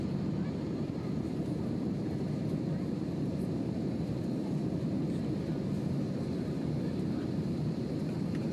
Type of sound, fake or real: fake